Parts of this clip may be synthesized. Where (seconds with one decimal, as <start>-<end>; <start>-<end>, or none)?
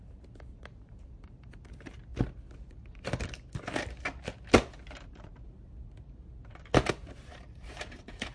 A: 0.0-2.1; 6.9-8.3